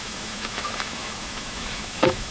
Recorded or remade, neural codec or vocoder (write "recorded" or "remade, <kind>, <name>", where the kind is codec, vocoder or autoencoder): remade, autoencoder, DAC-VAE